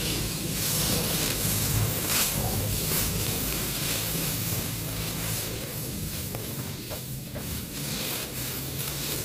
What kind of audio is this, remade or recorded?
remade